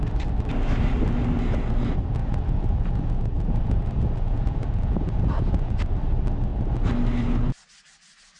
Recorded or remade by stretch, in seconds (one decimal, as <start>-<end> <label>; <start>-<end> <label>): 0.0-2.2 recorded; 2.2-5.7 remade; 5.7-8.4 recorded